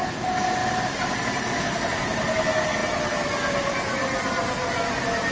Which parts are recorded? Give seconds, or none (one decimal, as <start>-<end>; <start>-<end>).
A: 0.0-0.6; 2.0-2.8; 3.3-5.3